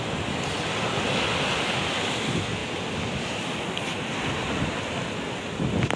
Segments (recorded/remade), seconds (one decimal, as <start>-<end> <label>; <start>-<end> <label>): 0.0-6.0 recorded